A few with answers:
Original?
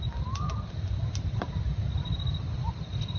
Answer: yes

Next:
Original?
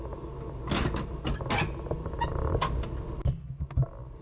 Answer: yes